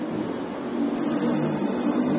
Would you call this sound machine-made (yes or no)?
no